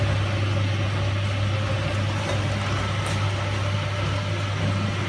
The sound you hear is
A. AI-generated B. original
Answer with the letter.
B